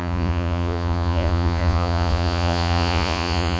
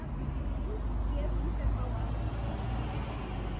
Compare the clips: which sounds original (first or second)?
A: second